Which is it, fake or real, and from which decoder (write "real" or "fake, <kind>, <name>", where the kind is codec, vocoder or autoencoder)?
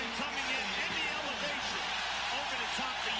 real